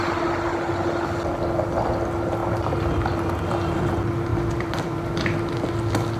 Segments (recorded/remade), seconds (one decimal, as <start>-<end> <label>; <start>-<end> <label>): 0.0-2.4 recorded; 2.4-3.9 remade; 3.9-4.3 recorded; 4.3-5.1 remade; 5.1-6.2 recorded